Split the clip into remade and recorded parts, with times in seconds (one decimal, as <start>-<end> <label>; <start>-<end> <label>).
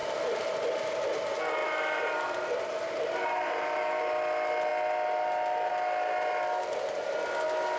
0.0-1.6 recorded; 1.6-4.0 remade; 4.0-7.8 recorded